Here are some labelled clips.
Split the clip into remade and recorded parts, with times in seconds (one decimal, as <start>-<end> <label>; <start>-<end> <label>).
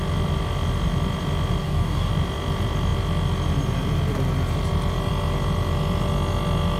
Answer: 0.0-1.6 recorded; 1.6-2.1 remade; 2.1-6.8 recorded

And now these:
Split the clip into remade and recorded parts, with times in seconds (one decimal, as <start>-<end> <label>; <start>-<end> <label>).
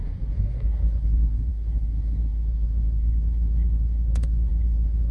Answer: 0.0-5.1 remade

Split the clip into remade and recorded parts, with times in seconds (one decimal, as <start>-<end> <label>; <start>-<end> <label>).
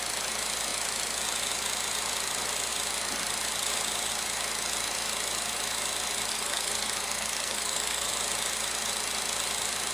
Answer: 0.0-6.3 recorded; 6.3-8.1 remade; 8.1-9.9 recorded